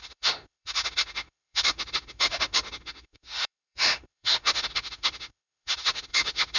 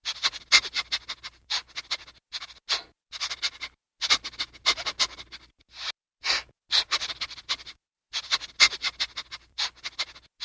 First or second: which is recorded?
second